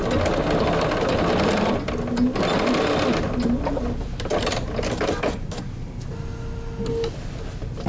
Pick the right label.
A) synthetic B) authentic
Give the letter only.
B